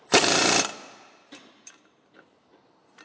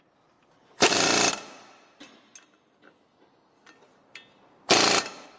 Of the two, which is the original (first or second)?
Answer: second